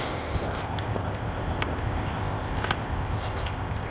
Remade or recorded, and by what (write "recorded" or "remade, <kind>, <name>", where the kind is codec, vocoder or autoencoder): remade, codec, ZipCodec